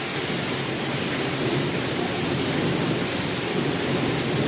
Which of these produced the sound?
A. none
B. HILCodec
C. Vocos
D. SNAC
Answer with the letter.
A